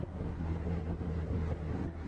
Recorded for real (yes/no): no